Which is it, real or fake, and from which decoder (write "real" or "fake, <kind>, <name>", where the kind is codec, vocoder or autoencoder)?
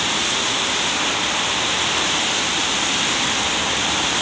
real